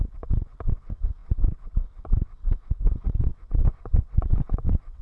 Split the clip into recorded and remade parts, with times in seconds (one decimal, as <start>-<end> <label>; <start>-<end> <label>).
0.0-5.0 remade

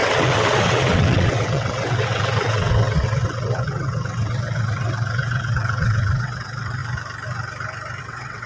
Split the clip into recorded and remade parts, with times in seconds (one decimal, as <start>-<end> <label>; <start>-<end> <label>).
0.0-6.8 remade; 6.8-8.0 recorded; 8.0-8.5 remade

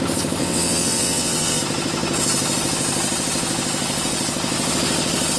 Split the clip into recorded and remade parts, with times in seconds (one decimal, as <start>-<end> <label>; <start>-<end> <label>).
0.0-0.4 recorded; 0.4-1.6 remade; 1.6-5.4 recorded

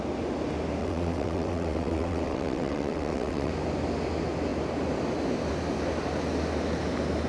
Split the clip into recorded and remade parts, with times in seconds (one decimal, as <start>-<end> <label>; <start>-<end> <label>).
0.0-0.8 recorded; 0.8-3.5 remade; 3.5-7.3 recorded

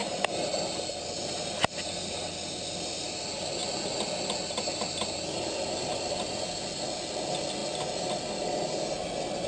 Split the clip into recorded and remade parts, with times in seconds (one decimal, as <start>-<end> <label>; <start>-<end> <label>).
0.0-9.5 recorded